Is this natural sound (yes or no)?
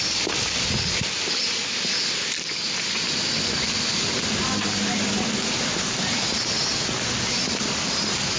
yes